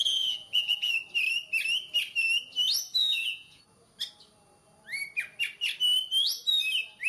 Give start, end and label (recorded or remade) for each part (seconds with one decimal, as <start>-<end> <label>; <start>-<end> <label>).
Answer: 0.0-0.9 remade; 0.9-3.0 recorded; 3.0-3.6 remade; 3.6-7.1 recorded